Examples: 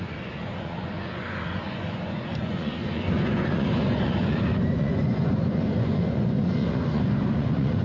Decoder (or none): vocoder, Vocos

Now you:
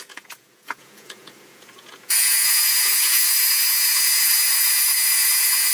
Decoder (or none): vocoder, Vocos